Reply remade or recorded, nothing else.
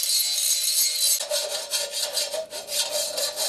recorded